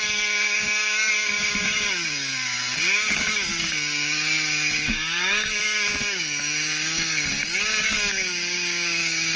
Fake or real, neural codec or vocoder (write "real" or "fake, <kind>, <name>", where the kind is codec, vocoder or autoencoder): fake, codec, DAC